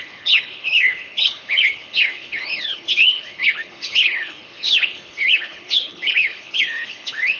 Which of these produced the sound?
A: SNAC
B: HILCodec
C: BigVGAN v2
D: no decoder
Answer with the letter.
B